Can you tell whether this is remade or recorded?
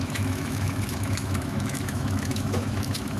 remade